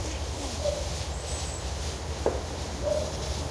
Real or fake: real